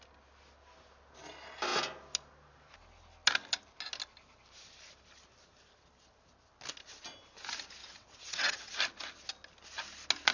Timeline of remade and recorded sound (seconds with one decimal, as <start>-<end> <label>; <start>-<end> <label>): 0.0-7.8 recorded; 7.8-8.7 remade; 8.7-10.3 recorded